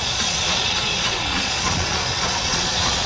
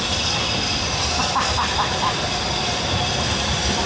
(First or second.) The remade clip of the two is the first